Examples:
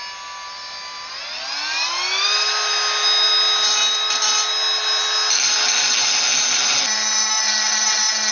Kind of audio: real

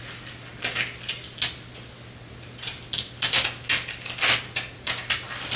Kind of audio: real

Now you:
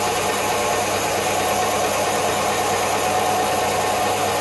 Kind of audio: real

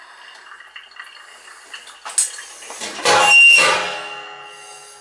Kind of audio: real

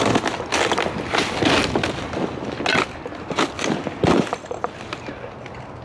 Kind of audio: real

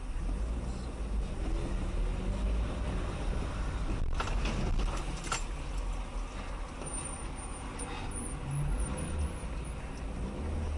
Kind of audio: real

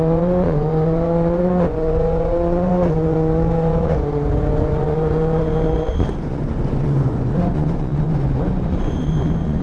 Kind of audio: fake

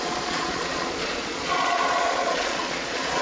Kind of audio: fake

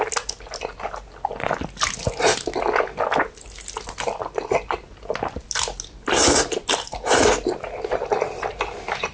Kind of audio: real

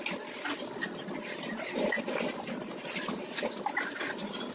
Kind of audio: real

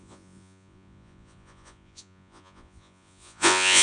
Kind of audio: fake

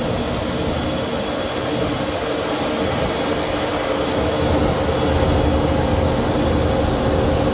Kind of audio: real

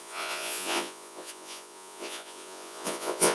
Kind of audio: fake